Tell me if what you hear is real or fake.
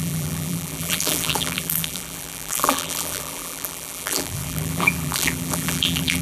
fake